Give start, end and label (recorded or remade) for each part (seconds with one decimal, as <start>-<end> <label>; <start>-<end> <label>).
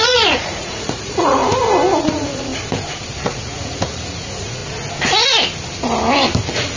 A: 0.0-1.4 remade; 1.4-2.0 recorded; 2.0-2.5 remade; 2.5-3.2 recorded; 3.2-4.6 remade; 4.6-6.8 recorded